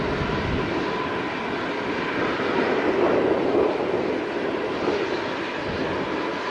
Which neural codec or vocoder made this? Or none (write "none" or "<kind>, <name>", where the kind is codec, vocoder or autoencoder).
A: none